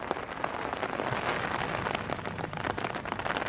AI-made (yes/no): no